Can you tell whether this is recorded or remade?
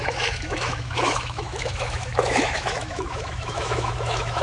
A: remade